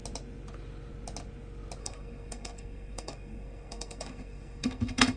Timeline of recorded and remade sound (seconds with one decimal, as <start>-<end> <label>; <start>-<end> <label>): 0.0-1.8 recorded; 1.8-5.2 remade